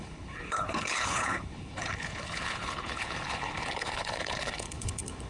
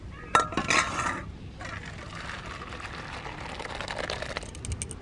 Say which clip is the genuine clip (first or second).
second